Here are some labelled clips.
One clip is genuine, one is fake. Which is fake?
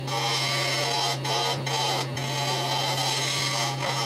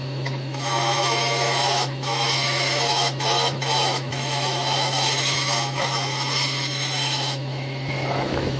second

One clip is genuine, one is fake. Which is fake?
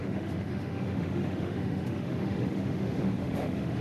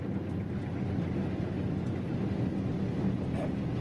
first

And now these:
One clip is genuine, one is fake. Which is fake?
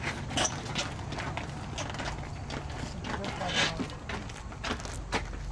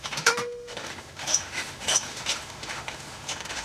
second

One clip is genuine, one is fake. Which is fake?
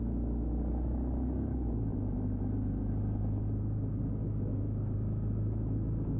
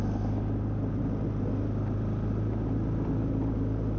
first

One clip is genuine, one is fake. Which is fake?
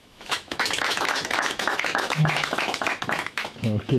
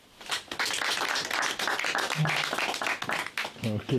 first